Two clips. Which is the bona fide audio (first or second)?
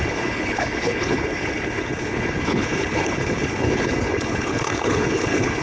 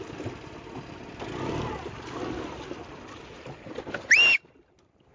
second